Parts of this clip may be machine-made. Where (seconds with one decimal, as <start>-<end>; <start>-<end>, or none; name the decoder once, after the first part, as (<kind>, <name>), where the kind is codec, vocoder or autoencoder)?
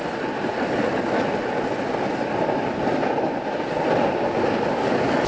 none